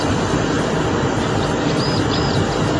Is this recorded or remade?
recorded